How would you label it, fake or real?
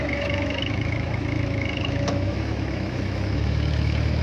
fake